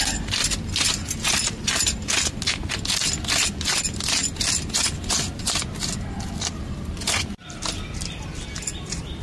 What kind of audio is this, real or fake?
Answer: real